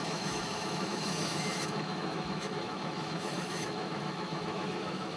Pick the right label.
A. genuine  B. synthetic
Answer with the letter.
B